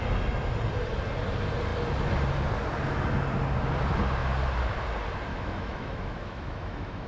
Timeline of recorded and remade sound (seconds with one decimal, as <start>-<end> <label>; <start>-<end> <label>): 0.0-5.3 recorded; 5.3-7.1 remade